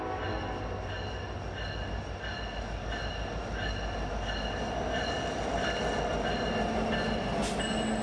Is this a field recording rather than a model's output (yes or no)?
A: yes